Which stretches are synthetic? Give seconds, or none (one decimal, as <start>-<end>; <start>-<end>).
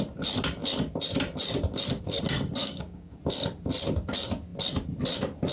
2.6-3.2